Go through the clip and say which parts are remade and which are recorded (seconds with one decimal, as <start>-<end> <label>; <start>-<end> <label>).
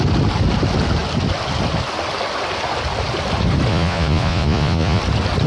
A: 0.0-3.7 recorded; 3.7-5.0 remade; 5.0-5.5 recorded